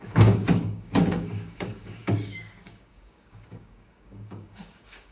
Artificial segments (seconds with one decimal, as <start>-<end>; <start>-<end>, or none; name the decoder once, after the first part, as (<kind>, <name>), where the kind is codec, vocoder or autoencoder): 0.0-5.1 (codec, DAC)